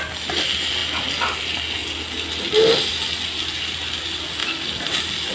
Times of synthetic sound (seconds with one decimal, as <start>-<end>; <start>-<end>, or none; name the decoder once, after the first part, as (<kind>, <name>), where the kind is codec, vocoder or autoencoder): none